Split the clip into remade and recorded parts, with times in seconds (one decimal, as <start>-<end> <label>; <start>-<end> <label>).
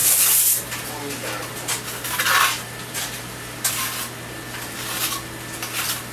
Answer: 0.0-6.1 recorded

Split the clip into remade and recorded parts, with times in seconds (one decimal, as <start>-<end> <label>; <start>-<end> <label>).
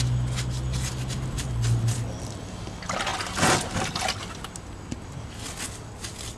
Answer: 0.0-6.4 recorded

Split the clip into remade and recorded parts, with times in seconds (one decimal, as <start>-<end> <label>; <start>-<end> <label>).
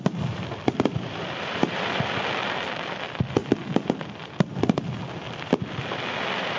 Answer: 0.0-6.6 remade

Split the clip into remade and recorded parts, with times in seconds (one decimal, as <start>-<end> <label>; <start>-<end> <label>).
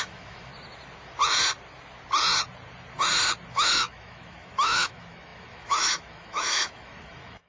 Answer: 0.0-0.5 remade; 0.5-3.5 recorded; 3.5-7.5 remade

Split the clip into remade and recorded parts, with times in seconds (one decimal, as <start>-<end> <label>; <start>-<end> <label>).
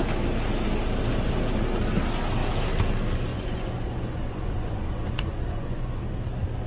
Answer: 0.0-3.3 recorded; 3.3-6.0 remade; 6.0-6.7 recorded